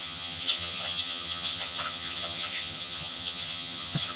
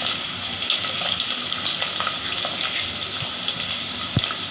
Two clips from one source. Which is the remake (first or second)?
first